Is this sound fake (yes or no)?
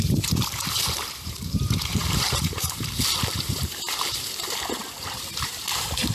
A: yes